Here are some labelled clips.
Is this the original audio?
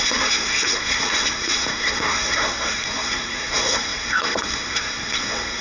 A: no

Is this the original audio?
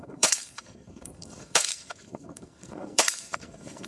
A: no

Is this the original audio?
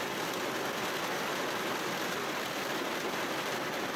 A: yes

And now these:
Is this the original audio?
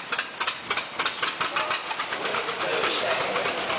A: yes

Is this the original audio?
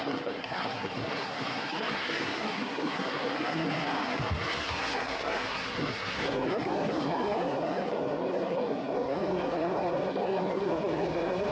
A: no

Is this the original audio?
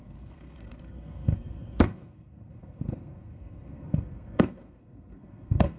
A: no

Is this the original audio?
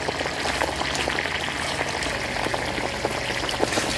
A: yes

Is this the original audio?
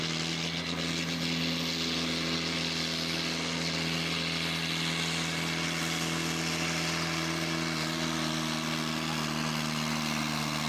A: yes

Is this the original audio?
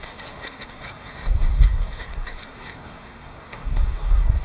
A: no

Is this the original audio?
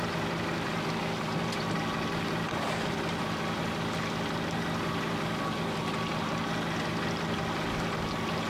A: yes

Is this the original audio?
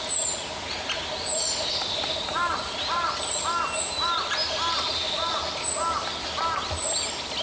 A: yes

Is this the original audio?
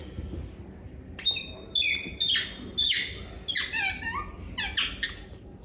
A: yes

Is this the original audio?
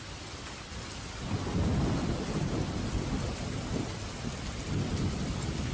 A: yes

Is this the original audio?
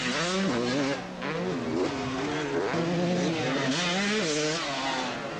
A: yes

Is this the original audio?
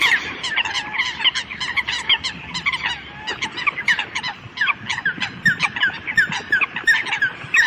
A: yes